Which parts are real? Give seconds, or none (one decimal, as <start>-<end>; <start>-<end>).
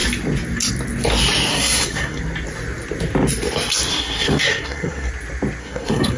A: 0.0-1.5; 2.2-3.9; 5.1-5.6